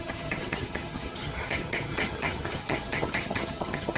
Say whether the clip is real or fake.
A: fake